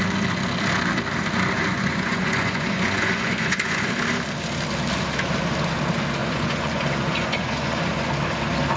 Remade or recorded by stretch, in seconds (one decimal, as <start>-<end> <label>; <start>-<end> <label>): 0.0-1.7 recorded; 1.7-3.9 remade; 3.9-6.2 recorded; 6.2-8.1 remade; 8.1-8.8 recorded